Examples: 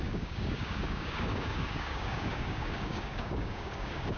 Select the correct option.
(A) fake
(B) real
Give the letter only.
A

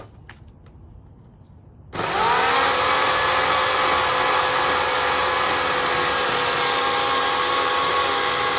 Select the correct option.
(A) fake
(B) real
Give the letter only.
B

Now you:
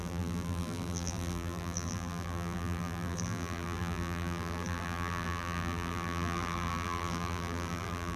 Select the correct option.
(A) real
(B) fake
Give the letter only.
B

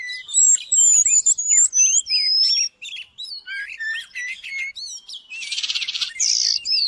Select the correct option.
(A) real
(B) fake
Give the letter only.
B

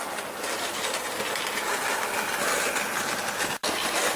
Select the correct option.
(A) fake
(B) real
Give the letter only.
B